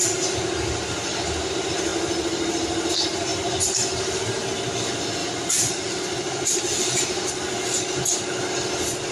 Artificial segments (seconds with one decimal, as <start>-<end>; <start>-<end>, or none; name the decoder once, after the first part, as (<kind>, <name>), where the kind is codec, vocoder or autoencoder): 5.2-7.3 (vocoder, BigVGAN v2)